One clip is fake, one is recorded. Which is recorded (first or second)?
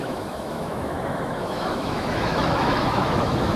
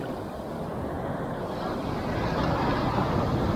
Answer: second